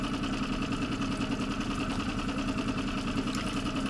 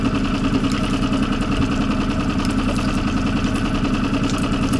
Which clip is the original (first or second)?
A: second